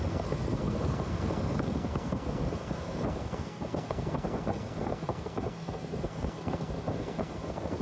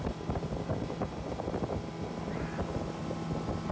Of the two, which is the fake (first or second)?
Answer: first